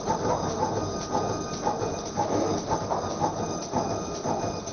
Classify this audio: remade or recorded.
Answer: recorded